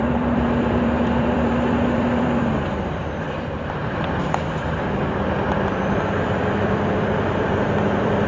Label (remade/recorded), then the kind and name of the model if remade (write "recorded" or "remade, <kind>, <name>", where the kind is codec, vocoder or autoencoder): remade, vocoder, BigVGAN v2